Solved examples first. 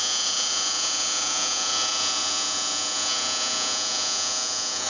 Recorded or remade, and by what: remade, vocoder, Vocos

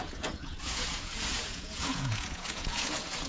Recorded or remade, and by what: remade, vocoder, Vocos